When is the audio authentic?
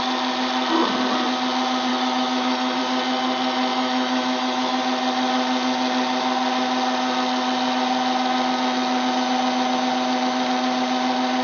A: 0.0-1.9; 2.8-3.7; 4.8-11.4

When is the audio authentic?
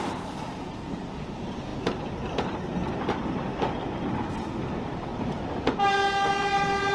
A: 0.0-6.9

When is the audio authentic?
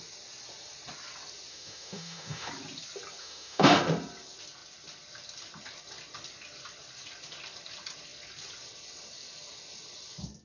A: 0.0-1.5; 2.5-3.2; 3.8-10.4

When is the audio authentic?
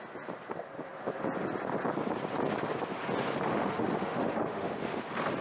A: 0.0-3.5; 5.0-5.4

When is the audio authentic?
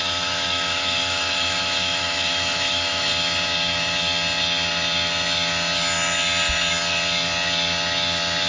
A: 3.1-8.5